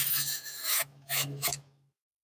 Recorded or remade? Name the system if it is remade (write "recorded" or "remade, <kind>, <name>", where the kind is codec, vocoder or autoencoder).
remade, autoencoder, DAC-VAE